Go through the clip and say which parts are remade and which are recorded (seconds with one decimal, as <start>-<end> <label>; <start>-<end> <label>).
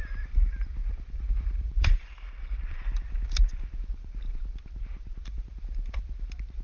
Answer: 0.0-6.6 remade